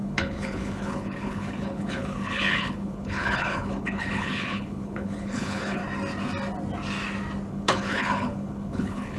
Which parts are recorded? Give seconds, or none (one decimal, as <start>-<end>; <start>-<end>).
5.8-7.5